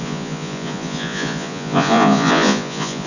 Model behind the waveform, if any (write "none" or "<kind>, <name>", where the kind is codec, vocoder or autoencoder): vocoder, Vocos